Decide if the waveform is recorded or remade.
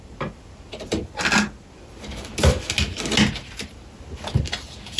recorded